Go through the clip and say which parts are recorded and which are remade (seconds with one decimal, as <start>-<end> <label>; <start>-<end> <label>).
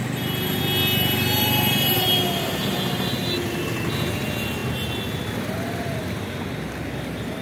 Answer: 0.0-7.4 recorded